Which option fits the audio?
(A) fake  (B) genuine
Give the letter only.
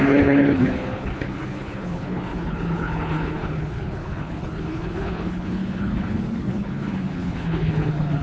A